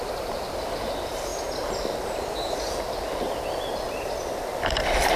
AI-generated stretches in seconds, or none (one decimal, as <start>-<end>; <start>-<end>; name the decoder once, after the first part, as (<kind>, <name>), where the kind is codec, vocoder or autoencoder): none